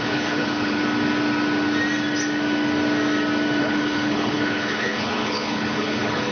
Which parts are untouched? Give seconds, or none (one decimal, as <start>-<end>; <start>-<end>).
0.8-3.6

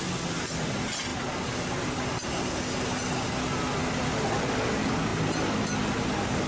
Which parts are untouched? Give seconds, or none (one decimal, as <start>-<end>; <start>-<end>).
0.0-6.5

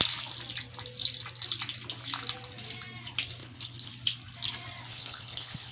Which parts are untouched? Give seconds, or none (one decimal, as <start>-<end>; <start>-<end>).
0.0-3.4; 3.9-4.9

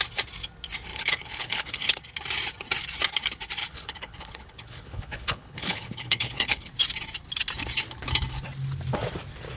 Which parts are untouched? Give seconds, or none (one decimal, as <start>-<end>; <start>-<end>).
0.0-0.9; 2.0-3.6; 6.7-9.6

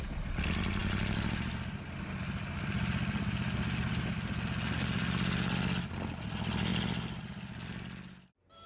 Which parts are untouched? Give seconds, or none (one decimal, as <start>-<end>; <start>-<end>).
0.0-8.7

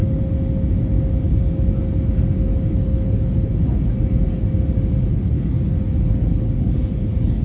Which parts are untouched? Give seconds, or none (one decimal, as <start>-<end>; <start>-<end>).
0.0-2.7; 3.5-5.1